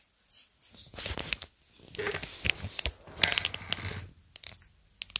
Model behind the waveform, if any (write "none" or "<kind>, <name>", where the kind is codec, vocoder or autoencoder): none